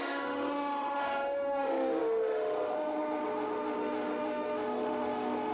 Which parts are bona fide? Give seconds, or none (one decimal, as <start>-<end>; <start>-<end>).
none